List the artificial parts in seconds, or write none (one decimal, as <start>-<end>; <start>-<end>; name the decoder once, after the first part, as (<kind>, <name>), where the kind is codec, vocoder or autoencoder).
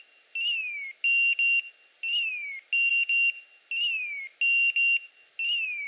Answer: none